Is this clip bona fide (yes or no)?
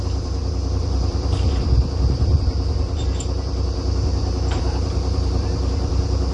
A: no